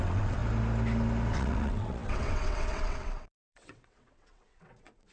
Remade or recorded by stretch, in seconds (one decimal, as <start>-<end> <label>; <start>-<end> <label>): 0.0-0.4 remade; 0.4-1.3 recorded; 1.3-5.1 remade

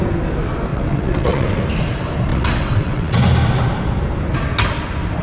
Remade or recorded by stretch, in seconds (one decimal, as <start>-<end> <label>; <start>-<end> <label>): 0.0-0.7 recorded; 0.7-1.6 remade; 1.6-2.3 recorded; 2.3-3.2 remade; 3.2-5.2 recorded

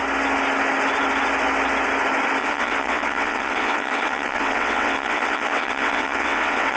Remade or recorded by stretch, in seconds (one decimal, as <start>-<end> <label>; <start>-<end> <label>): 0.0-2.4 recorded; 2.4-6.8 remade

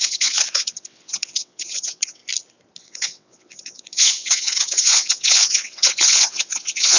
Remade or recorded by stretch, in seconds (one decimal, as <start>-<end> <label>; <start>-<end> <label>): 0.0-2.2 remade; 2.2-2.8 recorded; 2.8-7.0 remade

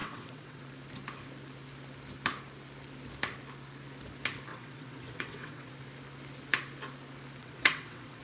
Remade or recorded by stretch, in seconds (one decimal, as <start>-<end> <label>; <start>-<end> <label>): 0.0-0.6 remade; 0.6-4.5 recorded; 4.5-5.7 remade; 5.7-7.4 recorded; 7.4-8.2 remade

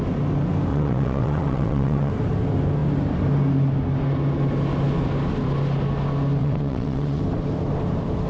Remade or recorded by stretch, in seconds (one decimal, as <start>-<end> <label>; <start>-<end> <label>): 0.0-0.7 recorded; 0.7-2.1 remade; 2.1-6.4 recorded; 6.4-7.2 remade; 7.2-8.3 recorded

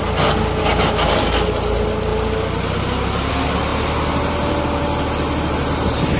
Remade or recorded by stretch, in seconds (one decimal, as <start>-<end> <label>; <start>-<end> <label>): 0.0-6.2 recorded